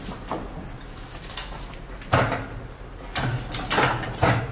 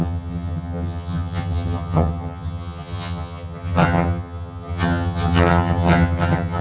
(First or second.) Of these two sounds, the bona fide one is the first